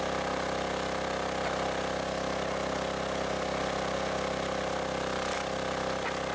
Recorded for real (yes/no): yes